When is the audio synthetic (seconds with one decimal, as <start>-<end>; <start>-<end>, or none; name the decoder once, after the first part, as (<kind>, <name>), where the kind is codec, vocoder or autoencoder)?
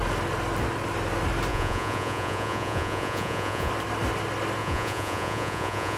1.5-3.7 (vocoder, Vocos); 4.6-6.0